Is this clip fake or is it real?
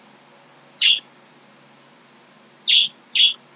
real